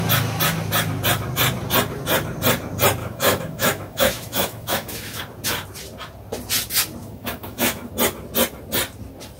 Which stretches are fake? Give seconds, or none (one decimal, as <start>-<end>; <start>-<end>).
3.0-5.2; 7.0-7.9